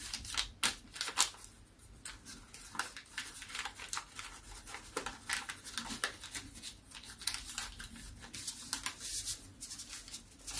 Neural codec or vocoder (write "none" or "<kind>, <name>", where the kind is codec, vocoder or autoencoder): none